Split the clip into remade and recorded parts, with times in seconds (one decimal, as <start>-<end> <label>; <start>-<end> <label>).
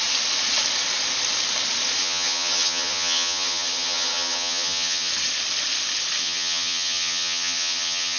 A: 0.0-2.0 recorded; 2.0-5.1 remade; 5.1-6.2 recorded; 6.2-8.2 remade